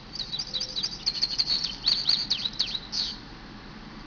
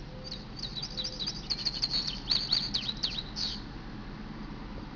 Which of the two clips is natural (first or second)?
second